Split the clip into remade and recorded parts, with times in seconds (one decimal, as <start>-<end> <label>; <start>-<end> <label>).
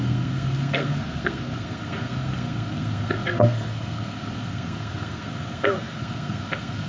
0.0-6.9 remade